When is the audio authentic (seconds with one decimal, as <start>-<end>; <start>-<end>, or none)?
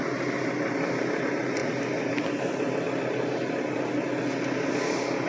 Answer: 0.0-5.3